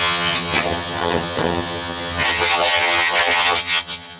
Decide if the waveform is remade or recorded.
remade